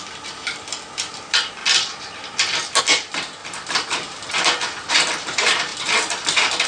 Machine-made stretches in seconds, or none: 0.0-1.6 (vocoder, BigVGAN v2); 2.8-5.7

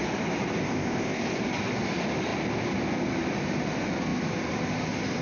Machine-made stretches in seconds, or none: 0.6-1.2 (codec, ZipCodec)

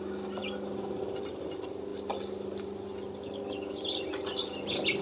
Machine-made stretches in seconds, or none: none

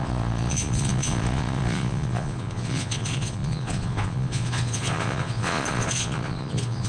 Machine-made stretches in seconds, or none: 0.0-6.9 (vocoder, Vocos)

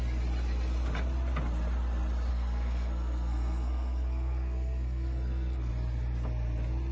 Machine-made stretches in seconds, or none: 2.3-5.7 (codec, SNAC)